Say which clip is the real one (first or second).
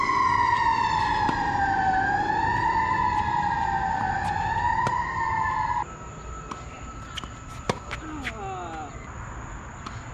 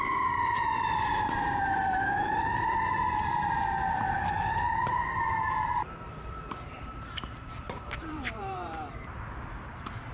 first